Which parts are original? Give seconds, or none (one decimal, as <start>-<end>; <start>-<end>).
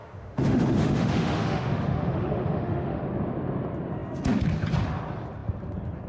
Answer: 3.0-6.1